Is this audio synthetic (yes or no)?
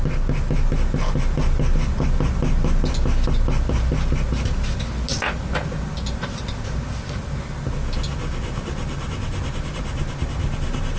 no